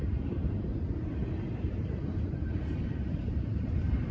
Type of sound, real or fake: fake